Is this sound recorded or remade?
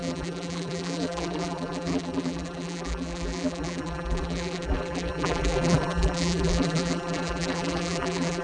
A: remade